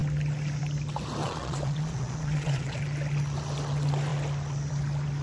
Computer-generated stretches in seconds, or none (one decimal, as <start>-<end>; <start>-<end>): 1.2-2.8